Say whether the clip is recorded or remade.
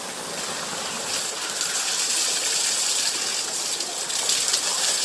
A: recorded